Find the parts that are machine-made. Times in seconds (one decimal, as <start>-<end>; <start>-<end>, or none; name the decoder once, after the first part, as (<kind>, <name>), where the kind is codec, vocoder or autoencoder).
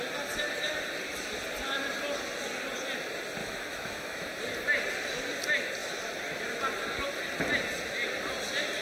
3.4-4.4 (autoencoder, DAC-VAE)